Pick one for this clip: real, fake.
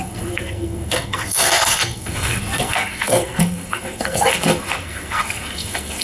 fake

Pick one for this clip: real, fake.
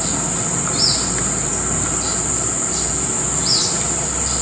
real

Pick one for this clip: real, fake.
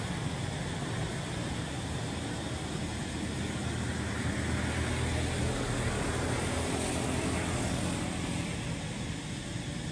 real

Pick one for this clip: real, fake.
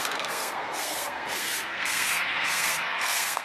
fake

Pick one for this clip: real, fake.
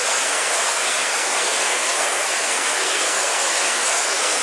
fake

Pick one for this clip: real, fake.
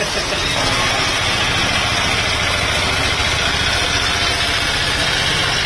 real